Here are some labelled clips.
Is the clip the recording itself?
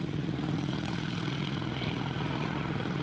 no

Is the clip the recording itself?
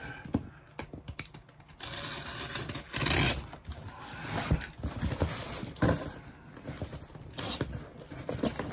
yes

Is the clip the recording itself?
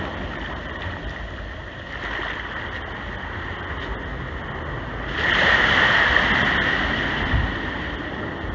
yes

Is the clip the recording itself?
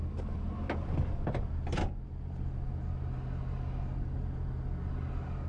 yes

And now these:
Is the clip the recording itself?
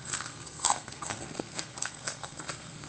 no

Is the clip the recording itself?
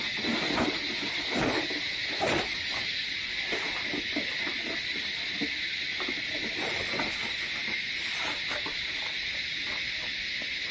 yes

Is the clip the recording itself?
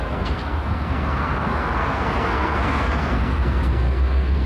no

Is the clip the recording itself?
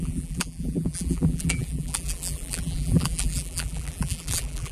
no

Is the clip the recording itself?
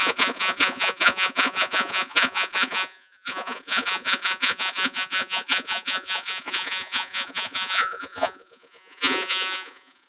no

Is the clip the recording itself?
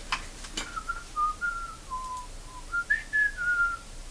yes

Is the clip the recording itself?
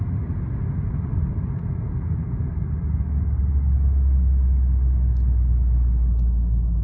yes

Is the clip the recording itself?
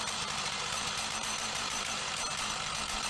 no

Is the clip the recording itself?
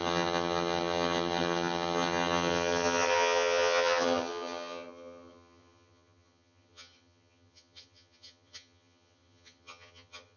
no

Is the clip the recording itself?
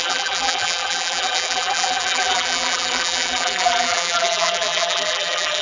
no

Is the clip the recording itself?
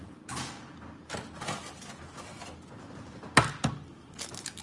yes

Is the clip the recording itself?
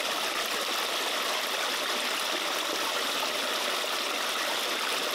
yes